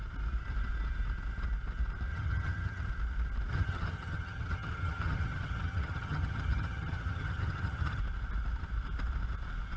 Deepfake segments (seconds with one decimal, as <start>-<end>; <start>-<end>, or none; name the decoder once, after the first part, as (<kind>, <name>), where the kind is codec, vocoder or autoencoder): 2.1-2.9 (vocoder, HiFi-GAN); 3.5-8.0